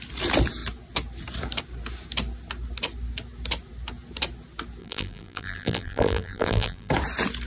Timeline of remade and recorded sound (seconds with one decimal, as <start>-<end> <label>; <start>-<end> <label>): 0.0-4.8 recorded; 4.8-6.9 remade; 6.9-7.5 recorded